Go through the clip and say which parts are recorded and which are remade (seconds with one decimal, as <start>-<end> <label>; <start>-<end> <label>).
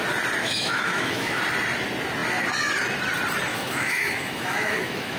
0.0-0.4 recorded; 0.4-1.4 remade; 1.4-3.5 recorded; 3.5-5.2 remade